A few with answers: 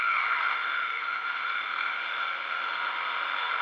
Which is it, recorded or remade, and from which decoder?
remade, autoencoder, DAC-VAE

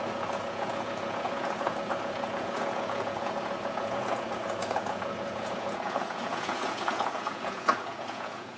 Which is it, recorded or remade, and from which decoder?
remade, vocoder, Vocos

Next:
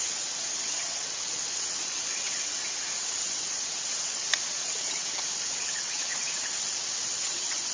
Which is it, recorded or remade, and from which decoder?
remade, vocoder, WaveNeXt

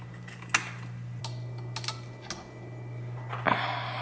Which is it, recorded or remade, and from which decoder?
recorded